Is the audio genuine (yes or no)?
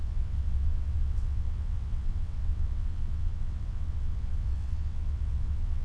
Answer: no